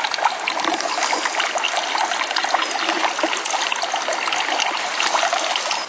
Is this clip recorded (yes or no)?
yes